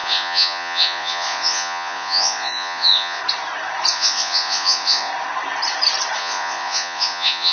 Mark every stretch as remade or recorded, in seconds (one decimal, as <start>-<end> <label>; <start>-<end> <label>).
0.0-3.2 remade; 3.2-3.9 recorded; 3.9-5.1 remade; 5.1-6.2 recorded; 6.2-7.5 remade